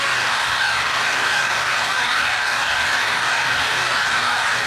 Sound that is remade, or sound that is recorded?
remade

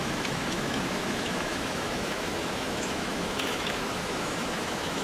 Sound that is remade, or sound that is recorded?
remade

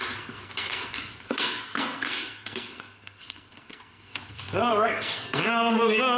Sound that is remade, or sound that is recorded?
remade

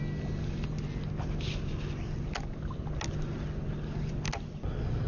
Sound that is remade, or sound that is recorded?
recorded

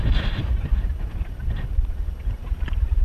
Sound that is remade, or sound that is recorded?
recorded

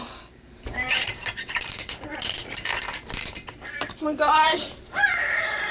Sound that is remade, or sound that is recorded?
remade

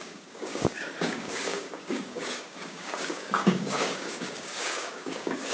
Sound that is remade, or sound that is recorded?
remade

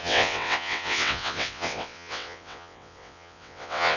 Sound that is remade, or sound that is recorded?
remade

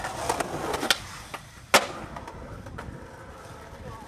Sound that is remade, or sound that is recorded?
recorded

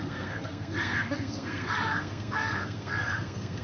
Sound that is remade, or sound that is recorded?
remade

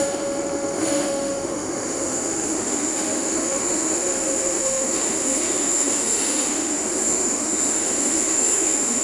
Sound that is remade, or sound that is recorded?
remade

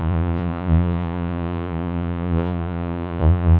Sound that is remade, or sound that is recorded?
remade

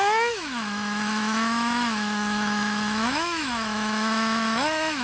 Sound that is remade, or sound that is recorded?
remade